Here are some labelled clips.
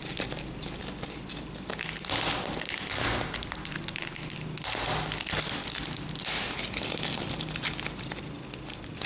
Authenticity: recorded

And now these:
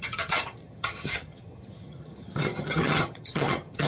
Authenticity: remade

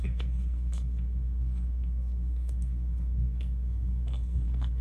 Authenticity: remade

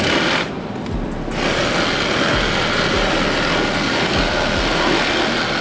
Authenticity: recorded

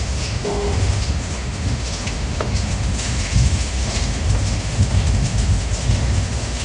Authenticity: remade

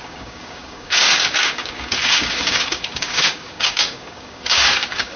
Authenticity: remade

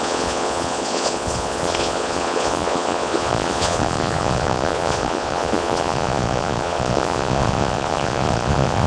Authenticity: remade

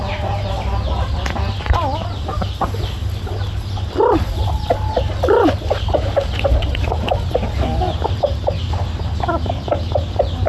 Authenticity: recorded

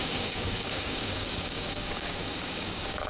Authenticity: remade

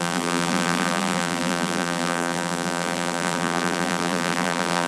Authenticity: remade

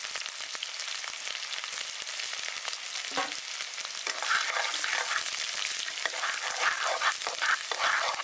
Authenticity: recorded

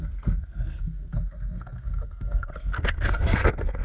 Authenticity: remade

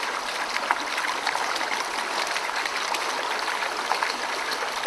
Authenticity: recorded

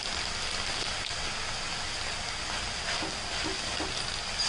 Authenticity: recorded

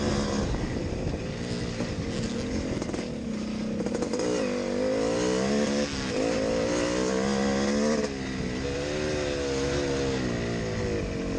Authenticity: recorded